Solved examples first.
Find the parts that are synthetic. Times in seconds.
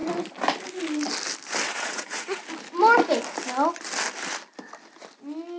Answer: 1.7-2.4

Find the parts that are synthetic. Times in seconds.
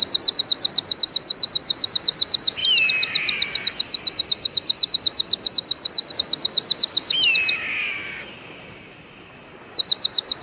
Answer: none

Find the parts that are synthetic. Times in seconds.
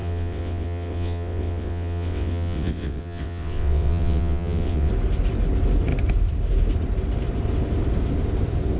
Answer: 0.0-4.9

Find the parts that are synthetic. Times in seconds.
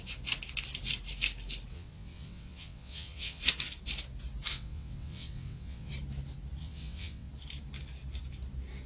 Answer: 1.7-3.4; 4.5-5.9; 6.6-7.3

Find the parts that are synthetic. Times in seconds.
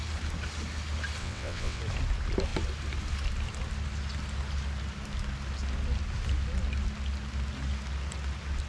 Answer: 1.2-1.8